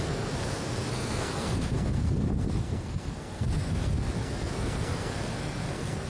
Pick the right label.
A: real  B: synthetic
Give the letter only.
B